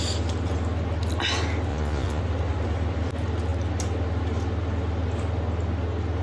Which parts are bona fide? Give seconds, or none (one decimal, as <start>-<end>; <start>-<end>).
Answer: 0.0-1.7; 2.2-6.2